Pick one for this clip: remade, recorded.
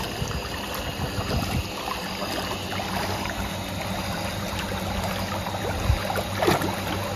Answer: recorded